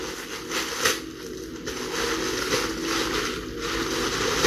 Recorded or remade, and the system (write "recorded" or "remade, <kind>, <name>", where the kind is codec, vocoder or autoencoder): recorded